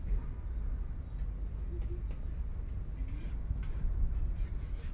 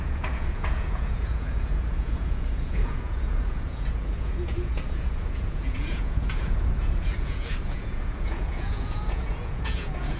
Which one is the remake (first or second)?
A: second